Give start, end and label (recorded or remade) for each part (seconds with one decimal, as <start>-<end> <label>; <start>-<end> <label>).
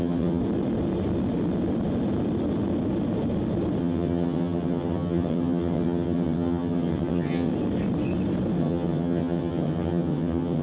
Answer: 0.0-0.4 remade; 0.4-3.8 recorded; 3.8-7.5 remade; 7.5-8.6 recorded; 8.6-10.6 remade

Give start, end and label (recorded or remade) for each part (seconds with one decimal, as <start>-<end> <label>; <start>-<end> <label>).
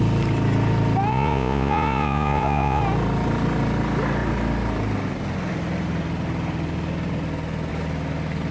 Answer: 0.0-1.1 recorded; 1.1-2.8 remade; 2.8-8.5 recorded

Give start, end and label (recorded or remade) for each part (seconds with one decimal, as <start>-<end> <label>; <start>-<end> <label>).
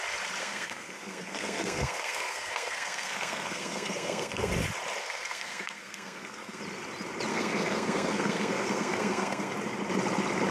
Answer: 0.0-0.4 recorded; 0.4-4.5 remade; 4.5-5.0 recorded; 5.0-6.6 remade; 6.6-7.3 recorded; 7.3-9.5 remade; 9.5-10.5 recorded